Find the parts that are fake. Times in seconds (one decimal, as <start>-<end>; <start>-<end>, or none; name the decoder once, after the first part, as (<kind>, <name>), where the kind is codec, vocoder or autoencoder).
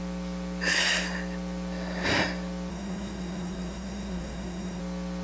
2.7-4.8 (codec, SNAC)